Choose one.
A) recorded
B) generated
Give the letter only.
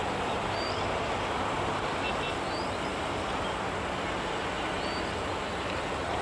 A